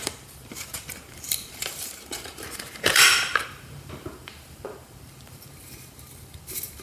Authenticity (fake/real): fake